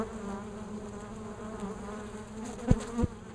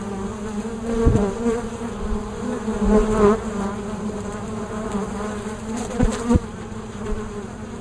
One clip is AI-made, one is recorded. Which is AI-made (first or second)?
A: second